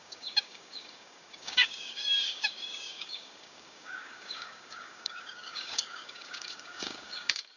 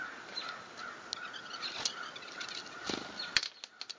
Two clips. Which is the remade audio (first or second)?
first